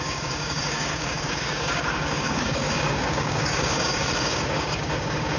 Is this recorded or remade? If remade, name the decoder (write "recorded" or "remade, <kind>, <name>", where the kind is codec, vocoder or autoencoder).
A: remade, codec, DAC